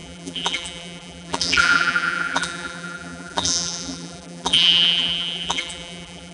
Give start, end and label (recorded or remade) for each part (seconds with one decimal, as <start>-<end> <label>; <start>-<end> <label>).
0.0-6.3 remade